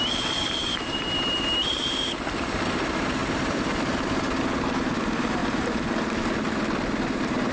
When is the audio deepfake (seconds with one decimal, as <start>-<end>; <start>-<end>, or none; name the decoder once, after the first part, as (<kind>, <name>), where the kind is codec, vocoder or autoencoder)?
0.6-2.2 (vocoder, BigVGAN v2); 3.2-3.8; 5.4-6.2